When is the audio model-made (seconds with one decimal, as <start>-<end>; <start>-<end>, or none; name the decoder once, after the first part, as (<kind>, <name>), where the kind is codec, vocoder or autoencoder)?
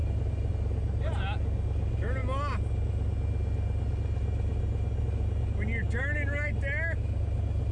none